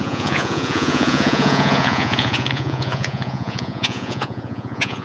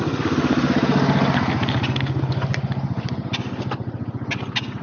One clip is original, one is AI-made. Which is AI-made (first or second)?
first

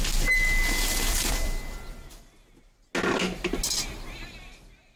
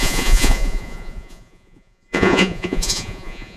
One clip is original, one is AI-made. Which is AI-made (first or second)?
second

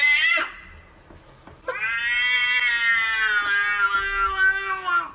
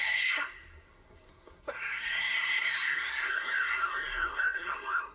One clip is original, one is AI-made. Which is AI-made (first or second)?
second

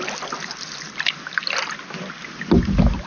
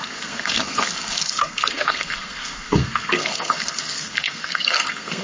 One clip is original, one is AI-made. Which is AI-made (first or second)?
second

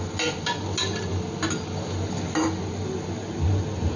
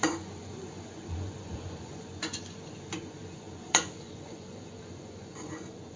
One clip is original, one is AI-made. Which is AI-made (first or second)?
second